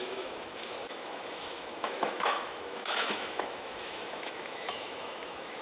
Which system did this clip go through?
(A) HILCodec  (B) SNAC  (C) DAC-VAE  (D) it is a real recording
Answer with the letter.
C